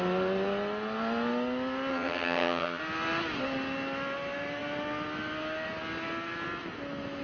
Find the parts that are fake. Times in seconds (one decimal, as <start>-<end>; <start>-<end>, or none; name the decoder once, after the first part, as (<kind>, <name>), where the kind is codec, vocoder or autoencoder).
1.9-2.8 (vocoder, HiFi-GAN)